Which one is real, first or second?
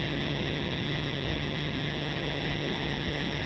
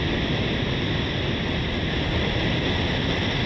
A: second